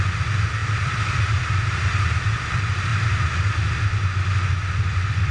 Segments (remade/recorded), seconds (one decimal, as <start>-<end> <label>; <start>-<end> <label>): 0.0-2.9 remade; 2.9-5.3 recorded